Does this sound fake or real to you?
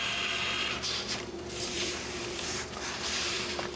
fake